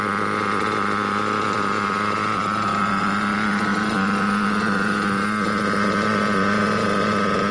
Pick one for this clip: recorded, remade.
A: recorded